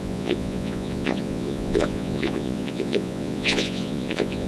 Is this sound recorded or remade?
remade